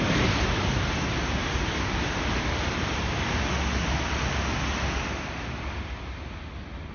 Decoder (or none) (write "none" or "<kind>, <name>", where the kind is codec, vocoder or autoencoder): none